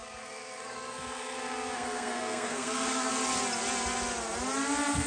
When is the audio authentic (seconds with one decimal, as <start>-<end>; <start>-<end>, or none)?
3.1-5.1